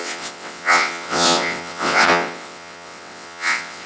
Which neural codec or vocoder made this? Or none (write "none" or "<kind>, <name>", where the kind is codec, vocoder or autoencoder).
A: vocoder, WaveNeXt